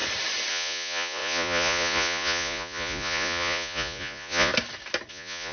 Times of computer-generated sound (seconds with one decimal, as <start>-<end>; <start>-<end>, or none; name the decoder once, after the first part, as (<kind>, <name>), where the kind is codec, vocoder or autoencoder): 0.5-4.5 (vocoder, Vocos); 5.1-5.5